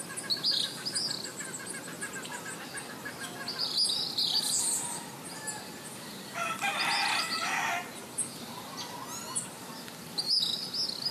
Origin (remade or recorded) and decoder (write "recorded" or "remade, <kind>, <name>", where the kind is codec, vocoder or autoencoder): recorded